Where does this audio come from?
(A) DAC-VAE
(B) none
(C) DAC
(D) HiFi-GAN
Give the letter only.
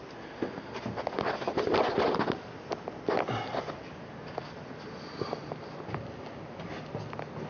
B